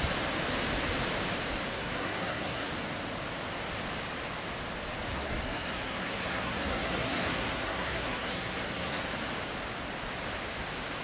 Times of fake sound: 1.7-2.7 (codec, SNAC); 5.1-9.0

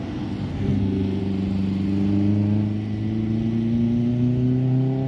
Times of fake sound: 0.5-1.2 (codec, SNAC)

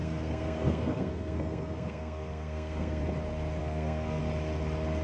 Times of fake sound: 0.0-3.0 (codec, SNAC); 3.6-4.2